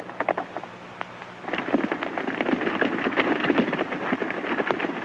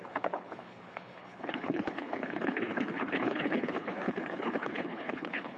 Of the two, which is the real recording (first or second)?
first